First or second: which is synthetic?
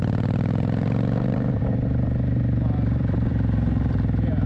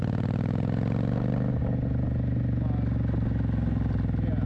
first